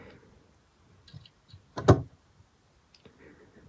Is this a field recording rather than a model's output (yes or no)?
yes